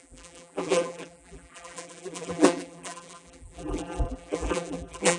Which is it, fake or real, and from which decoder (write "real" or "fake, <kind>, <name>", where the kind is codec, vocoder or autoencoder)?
fake, vocoder, BigVGAN v2